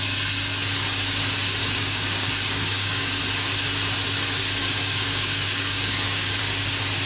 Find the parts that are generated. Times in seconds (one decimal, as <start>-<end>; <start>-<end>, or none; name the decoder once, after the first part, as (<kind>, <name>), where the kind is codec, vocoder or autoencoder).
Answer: 1.6-3.2 (codec, DAC); 4.6-6.4